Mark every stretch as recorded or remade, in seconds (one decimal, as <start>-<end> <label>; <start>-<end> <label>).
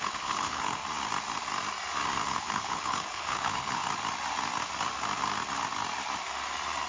0.0-0.8 remade; 0.8-2.4 recorded; 2.4-3.8 remade; 3.8-6.9 recorded